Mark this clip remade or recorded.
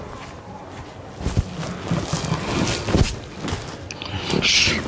recorded